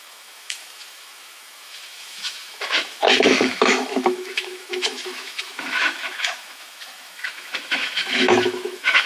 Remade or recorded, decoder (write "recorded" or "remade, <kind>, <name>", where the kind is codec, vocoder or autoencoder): remade, autoencoder, DAC-VAE